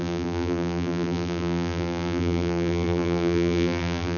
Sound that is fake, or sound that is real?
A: fake